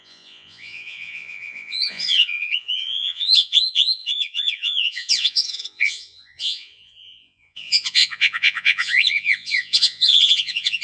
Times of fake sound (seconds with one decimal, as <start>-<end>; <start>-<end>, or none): 0.0-10.8